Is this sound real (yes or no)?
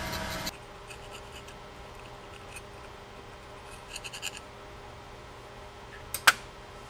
yes